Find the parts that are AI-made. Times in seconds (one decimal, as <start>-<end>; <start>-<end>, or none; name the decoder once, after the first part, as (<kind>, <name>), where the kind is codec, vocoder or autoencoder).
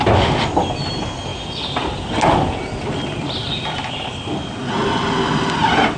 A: none